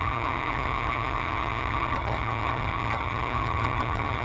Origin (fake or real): fake